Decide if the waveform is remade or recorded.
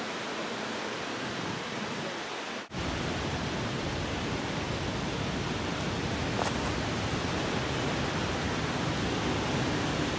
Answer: recorded